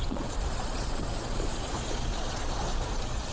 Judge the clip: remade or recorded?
remade